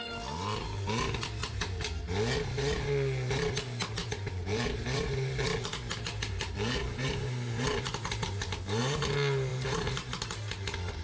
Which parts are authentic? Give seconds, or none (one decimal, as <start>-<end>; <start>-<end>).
0.0-1.4; 2.0-4.0; 8.8-9.5; 10.3-11.0